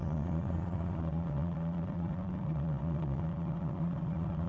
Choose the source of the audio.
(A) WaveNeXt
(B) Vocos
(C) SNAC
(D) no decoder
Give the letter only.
B